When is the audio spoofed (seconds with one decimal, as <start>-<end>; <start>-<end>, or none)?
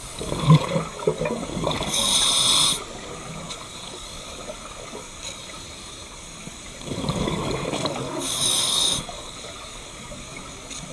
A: 0.0-2.1; 3.1-10.9